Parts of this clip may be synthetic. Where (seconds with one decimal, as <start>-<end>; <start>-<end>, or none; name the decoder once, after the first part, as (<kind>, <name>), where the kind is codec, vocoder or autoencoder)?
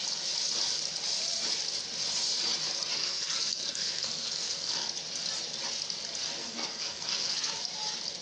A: 3.0-4.9 (codec, SNAC); 6.4-7.5